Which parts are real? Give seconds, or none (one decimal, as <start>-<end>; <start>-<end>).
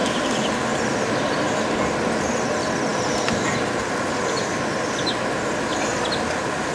0.0-6.7